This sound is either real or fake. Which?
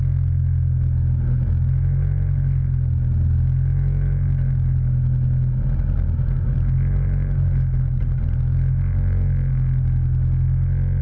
real